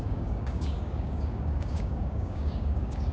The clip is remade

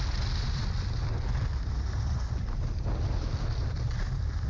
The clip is recorded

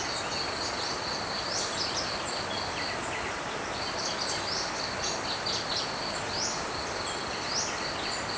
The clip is recorded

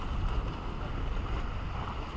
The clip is recorded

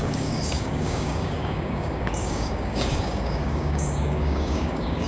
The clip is remade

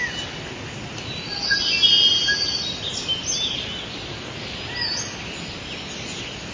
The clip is recorded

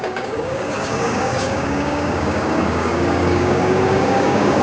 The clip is remade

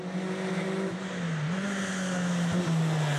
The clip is recorded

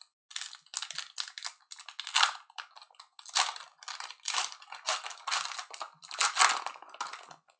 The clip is recorded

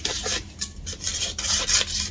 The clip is recorded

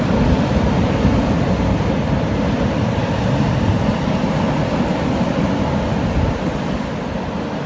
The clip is recorded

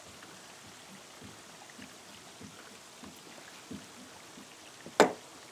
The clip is recorded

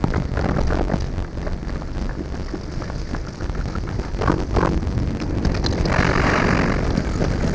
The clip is recorded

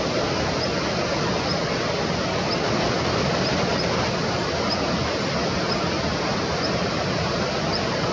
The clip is recorded